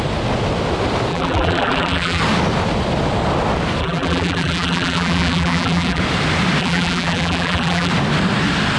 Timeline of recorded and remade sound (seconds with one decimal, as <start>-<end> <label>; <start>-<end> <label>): 0.0-1.1 recorded; 1.1-2.2 remade; 2.2-3.8 recorded; 3.8-6.0 remade; 6.0-6.6 recorded; 6.6-7.9 remade; 7.9-8.8 recorded